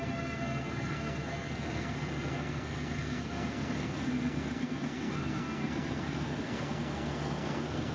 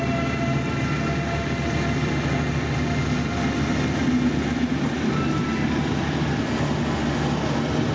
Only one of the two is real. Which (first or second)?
second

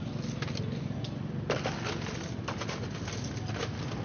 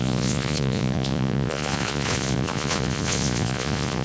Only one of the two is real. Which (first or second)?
first